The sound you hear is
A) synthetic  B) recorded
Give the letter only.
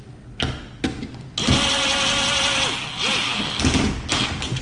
B